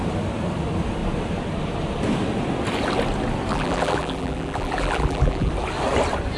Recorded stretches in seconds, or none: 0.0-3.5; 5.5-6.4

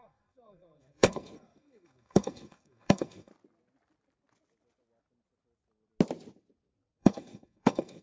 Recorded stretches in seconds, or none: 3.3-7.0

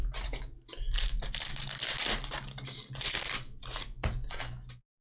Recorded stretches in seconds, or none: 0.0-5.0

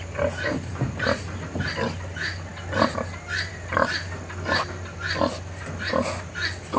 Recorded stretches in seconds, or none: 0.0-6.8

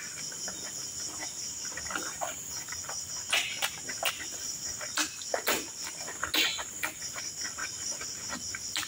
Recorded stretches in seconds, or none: 0.0-1.2; 3.1-5.0; 6.0-6.5; 7.0-8.9